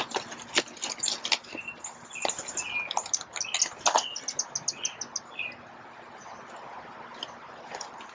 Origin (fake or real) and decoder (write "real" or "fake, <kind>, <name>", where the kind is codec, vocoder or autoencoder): real